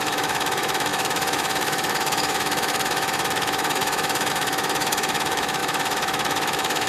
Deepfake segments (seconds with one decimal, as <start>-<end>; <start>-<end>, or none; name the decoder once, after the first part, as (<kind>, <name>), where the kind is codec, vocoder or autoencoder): 0.0-6.9 (autoencoder, DAC-VAE)